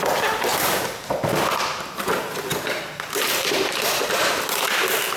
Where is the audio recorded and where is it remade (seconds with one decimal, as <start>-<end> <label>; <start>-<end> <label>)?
0.0-0.5 recorded; 0.5-1.1 remade; 1.1-2.5 recorded; 2.5-4.4 remade; 4.4-5.2 recorded